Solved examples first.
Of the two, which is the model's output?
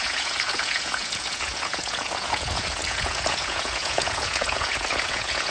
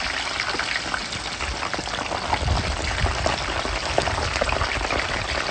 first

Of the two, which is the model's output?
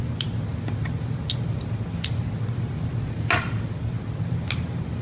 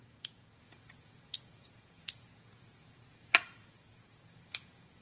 second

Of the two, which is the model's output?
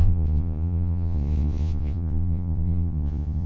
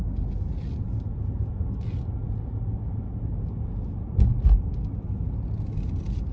first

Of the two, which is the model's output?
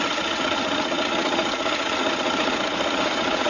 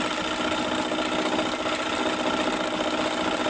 first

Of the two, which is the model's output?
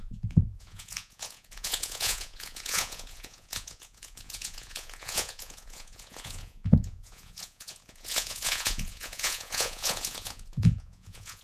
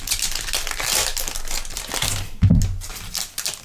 first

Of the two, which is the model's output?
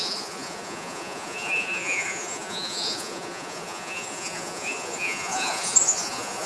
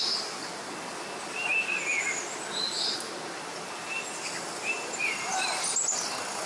first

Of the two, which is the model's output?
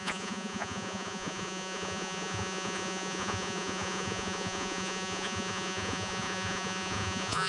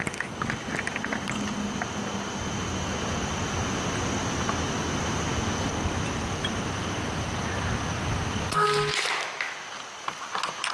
first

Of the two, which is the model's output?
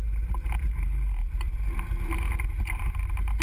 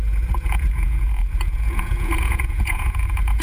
second